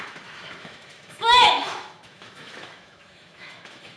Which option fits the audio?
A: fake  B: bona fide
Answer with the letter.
A